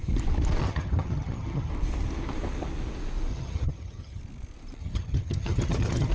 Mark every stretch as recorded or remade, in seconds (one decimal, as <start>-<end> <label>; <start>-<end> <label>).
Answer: 0.0-0.6 recorded; 0.6-1.7 remade; 1.7-3.3 recorded; 3.3-4.2 remade; 4.2-4.8 recorded; 4.8-6.1 remade